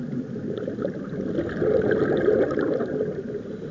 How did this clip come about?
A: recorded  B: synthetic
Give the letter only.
A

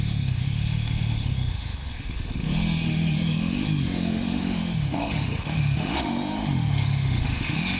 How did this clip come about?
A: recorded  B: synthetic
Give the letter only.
B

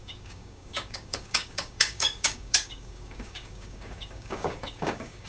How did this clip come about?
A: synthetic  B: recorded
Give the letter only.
A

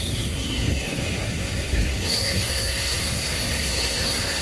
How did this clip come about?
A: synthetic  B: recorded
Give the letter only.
A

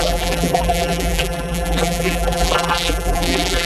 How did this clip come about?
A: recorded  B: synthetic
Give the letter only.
B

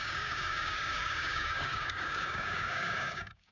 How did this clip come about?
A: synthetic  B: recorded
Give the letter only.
A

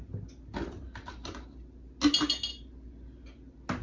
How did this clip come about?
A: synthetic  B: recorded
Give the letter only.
B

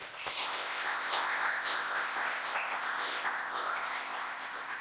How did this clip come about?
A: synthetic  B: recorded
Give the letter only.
A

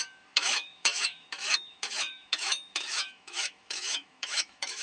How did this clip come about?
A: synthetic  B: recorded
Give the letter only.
A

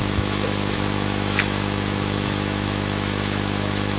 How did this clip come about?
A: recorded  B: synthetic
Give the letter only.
B